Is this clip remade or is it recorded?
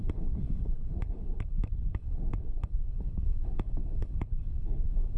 remade